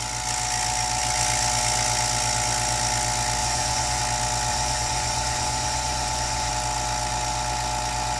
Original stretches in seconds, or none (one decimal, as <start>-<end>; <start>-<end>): 0.0-3.4; 4.0-4.5; 6.5-8.2